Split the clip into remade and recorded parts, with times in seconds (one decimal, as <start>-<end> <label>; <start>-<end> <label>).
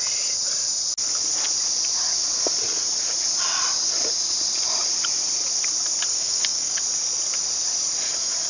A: 0.0-6.1 recorded; 6.1-6.8 remade; 6.8-8.5 recorded